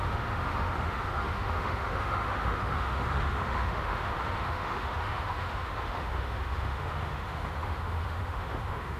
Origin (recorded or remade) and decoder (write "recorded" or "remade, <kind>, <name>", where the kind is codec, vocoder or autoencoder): remade, autoencoder, DAC-VAE